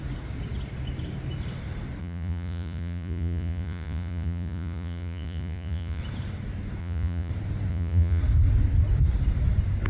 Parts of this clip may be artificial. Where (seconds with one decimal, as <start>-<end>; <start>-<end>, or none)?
2.0-6.0; 6.8-7.3; 7.7-8.2